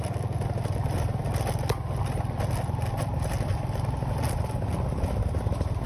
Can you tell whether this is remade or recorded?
recorded